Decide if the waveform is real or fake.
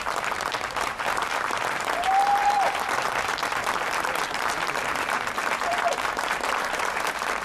fake